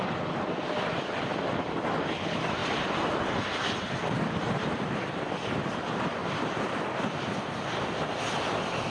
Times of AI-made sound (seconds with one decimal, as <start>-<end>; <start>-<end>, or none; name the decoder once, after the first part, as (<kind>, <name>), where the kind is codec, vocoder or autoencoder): 0.0-2.6 (vocoder, BigVGAN v2); 3.9-8.9